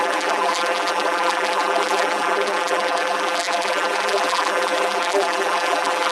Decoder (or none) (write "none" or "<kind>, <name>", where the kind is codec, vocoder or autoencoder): vocoder, BigVGAN v2